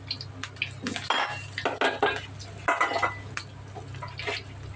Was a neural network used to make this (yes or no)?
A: no